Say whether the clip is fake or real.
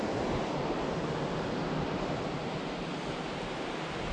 real